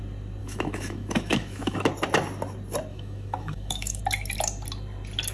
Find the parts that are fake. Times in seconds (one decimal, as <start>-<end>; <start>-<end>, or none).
0.4-1.9; 2.9-4.0